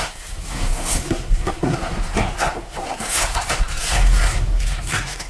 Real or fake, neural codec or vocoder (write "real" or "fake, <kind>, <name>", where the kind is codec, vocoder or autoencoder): fake, codec, SNAC